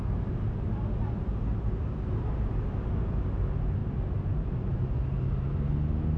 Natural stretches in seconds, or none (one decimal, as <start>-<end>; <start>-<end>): 0.0-6.2